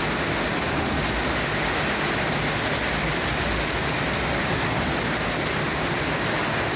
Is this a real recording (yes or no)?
yes